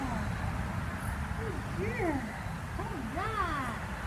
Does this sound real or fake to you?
real